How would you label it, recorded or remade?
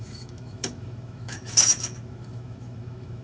remade